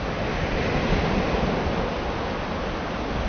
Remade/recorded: recorded